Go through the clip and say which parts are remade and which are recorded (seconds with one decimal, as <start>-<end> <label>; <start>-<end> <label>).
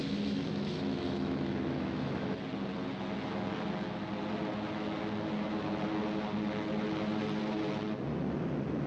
0.0-2.3 remade; 2.3-8.9 recorded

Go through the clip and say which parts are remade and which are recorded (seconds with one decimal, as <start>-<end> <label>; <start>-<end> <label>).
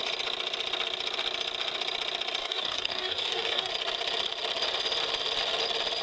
0.0-2.4 recorded; 2.4-3.7 remade; 3.7-6.0 recorded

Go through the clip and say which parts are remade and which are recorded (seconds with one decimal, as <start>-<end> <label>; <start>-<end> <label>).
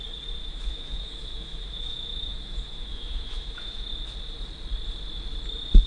0.0-0.4 recorded; 0.4-3.9 remade; 3.9-5.9 recorded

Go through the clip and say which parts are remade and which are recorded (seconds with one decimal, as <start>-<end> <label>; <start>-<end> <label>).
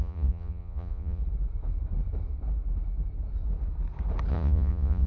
0.0-1.2 remade; 1.2-4.3 recorded; 4.3-5.1 remade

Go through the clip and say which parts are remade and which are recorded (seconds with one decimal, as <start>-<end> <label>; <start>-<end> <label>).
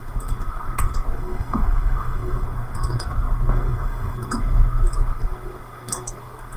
0.0-6.6 remade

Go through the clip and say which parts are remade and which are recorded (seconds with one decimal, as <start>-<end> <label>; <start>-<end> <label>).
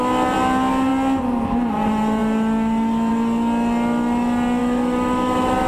0.0-4.6 recorded; 4.6-5.7 remade